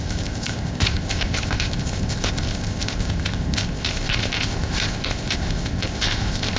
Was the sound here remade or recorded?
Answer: remade